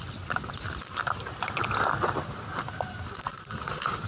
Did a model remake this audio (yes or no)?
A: no